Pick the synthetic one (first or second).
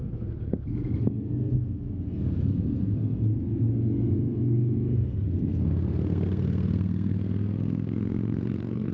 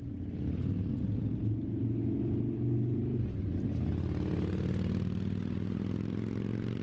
first